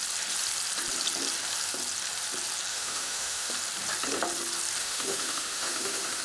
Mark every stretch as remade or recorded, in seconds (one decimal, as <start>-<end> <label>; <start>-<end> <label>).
0.0-2.7 recorded; 2.7-3.5 remade; 3.5-4.8 recorded; 4.8-6.2 remade